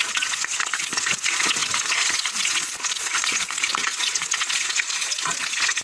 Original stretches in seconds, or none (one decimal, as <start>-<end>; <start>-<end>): none